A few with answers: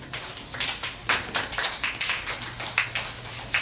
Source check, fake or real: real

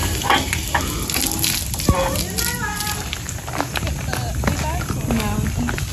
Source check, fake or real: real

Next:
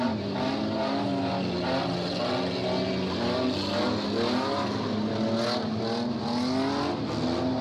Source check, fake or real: real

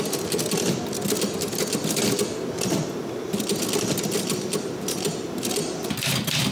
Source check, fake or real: real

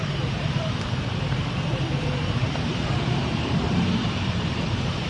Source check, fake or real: fake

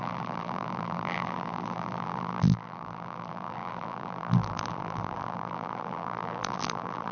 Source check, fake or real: fake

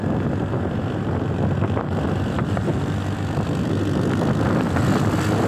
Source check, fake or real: fake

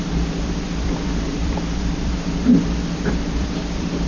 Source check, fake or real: fake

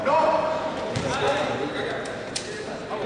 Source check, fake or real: fake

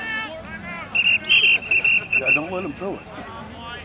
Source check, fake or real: real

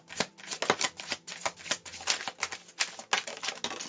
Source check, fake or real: real